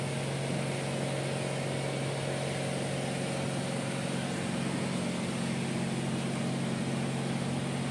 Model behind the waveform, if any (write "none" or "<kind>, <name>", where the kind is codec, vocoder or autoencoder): none